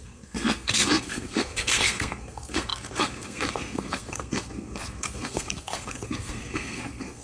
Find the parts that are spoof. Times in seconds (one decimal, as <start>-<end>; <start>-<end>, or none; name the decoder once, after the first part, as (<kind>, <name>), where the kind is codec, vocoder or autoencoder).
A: 0.0-7.2 (codec, SNAC)